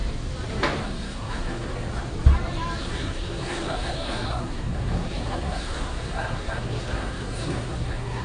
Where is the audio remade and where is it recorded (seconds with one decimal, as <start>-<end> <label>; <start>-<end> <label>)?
0.0-0.8 recorded; 0.8-1.7 remade; 1.7-2.8 recorded; 2.8-8.2 remade